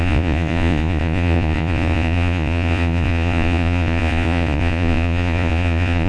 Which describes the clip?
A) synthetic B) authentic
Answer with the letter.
A